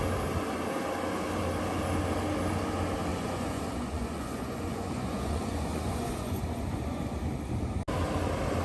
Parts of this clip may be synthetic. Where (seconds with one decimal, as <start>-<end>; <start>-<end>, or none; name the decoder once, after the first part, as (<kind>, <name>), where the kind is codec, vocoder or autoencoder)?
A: 3.1-7.1 (vocoder, Vocos)